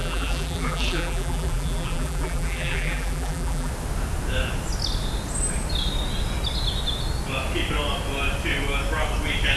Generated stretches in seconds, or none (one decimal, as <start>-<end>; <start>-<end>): 0.0-3.7